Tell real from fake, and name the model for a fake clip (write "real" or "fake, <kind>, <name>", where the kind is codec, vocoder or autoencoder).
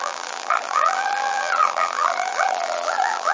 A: fake, vocoder, BigVGAN v2